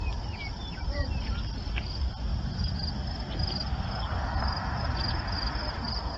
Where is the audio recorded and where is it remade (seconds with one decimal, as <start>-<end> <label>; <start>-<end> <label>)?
0.0-2.3 recorded; 2.3-6.2 remade